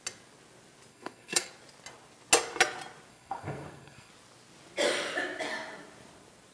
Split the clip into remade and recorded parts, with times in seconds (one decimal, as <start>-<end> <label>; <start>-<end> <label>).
0.0-0.9 recorded; 0.9-1.5 remade; 1.5-3.1 recorded; 3.1-4.1 remade; 4.1-6.5 recorded